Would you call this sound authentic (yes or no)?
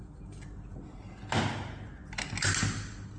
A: yes